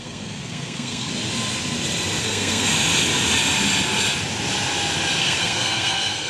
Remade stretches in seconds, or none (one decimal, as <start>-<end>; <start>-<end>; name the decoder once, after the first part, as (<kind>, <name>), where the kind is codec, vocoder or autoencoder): 0.0-1.1 (codec, SNAC); 2.2-2.7; 5.2-6.3